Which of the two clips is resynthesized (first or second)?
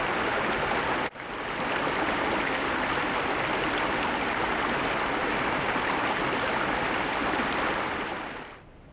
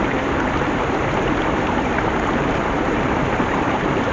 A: second